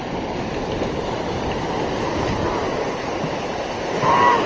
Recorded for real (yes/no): yes